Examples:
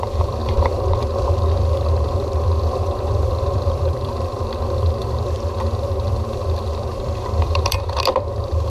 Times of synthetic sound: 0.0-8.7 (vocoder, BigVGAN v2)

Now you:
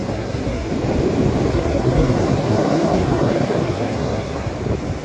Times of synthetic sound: 0.0-0.7 (codec, SNAC); 1.5-4.5

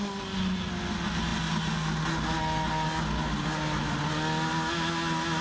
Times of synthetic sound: none

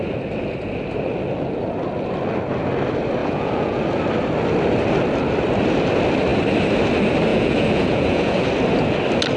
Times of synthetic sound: 3.2-3.8 (vocoder, Vocos); 7.3-8.5

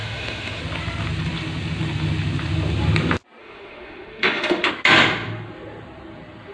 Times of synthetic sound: 0.0-0.6 (autoencoder, DAC-VAE); 3.4-4.7

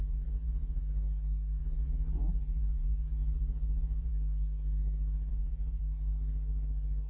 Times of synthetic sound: 0.0-0.8 (vocoder, Vocos); 1.6-4.1; 5.3-5.8

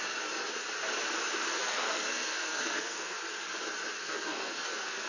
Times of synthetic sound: 1.6-3.2 (codec, SNAC); 4.0-5.1

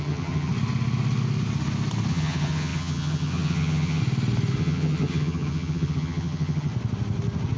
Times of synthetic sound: 0.0-0.5 (vocoder, HiFi-GAN); 2.1-4.0; 4.6-6.7